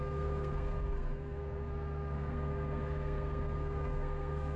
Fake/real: fake